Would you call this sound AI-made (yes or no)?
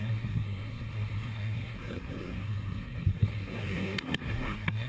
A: yes